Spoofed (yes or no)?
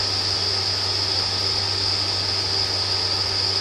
no